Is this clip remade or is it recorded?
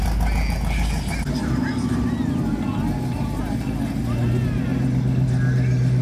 recorded